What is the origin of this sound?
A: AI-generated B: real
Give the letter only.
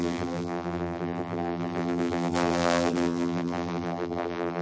A